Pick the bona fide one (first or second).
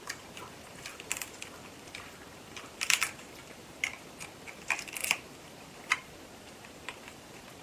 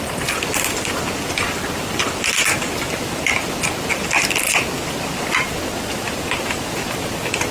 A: second